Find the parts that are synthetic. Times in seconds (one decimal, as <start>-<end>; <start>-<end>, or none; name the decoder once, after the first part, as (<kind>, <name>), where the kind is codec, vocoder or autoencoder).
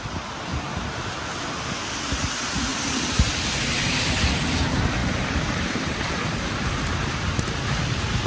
2.7-3.5 (vocoder, BigVGAN v2); 5.0-7.2